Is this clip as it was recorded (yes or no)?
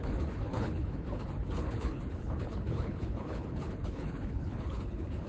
no